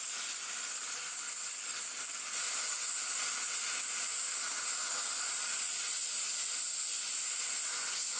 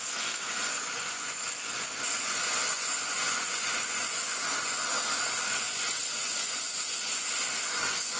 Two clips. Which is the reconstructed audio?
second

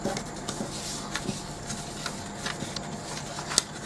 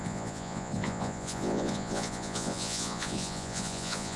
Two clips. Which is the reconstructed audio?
second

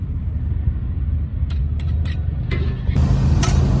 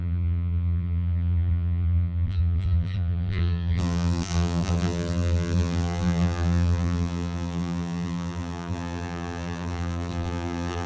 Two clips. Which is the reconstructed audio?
second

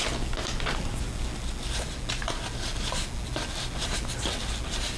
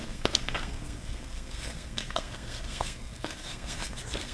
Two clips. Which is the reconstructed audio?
second